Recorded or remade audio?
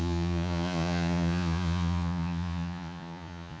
remade